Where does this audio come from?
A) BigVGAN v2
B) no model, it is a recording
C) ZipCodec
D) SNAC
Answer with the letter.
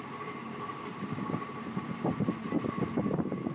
A